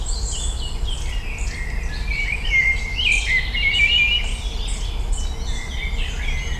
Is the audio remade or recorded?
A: recorded